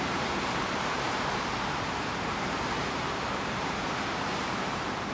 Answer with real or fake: fake